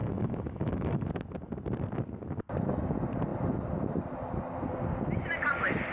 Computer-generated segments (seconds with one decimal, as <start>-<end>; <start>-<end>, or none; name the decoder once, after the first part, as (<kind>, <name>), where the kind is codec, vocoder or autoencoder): 0.0-1.1 (autoencoder, DAC-VAE)